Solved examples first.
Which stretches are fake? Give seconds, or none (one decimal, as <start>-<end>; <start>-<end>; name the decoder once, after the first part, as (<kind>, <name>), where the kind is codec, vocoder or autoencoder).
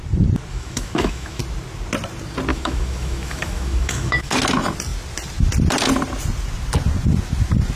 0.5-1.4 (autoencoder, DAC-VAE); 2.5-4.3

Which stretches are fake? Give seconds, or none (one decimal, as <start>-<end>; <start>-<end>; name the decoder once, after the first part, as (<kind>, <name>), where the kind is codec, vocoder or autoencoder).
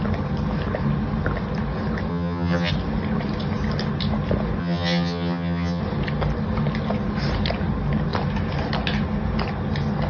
2.1-2.7 (vocoder, HiFi-GAN); 4.6-5.8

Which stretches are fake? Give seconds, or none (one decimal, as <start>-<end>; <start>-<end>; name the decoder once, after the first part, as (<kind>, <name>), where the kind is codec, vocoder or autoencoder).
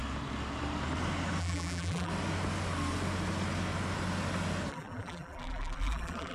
1.4-2.1 (vocoder, BigVGAN v2); 4.7-6.3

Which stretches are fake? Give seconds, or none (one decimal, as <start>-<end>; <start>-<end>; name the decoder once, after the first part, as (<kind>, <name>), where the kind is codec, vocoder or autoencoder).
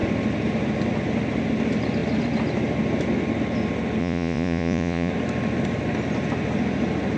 4.0-5.1 (vocoder, Vocos)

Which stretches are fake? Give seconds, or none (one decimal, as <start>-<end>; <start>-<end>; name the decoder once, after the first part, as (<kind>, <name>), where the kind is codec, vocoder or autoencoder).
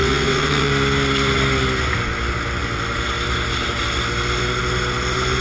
0.0-0.7 (vocoder, WaveNeXt)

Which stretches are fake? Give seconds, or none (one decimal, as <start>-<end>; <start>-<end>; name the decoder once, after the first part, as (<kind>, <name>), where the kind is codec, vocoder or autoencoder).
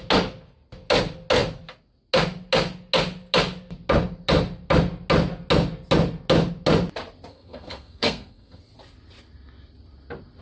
7.3-8.6 (codec, SNAC)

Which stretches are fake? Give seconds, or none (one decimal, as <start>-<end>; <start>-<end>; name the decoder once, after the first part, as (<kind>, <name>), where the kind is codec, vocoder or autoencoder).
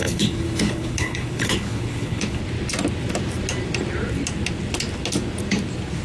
0.0-2.4 (codec, HILCodec)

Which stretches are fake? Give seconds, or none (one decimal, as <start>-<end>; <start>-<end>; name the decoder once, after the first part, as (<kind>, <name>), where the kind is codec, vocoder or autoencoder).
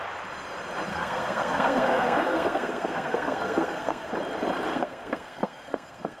0.9-4.1 (codec, SNAC); 4.7-6.2